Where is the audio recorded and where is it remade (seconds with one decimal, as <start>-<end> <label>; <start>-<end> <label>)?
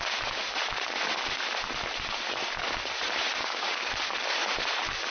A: 0.0-3.4 recorded; 3.4-3.9 remade; 3.9-5.1 recorded